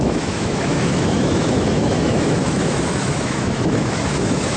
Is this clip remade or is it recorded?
remade